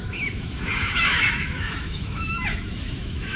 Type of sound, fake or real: fake